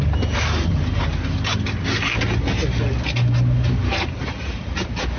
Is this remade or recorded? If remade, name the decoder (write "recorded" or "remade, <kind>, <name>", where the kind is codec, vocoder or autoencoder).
recorded